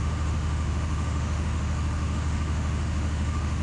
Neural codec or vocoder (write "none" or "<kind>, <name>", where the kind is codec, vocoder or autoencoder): autoencoder, DAC-VAE